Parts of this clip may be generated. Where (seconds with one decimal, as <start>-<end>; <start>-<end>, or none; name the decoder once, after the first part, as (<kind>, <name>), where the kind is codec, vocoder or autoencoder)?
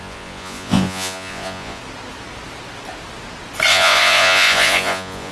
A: 0.0-1.8 (vocoder, Vocos); 3.7-5.3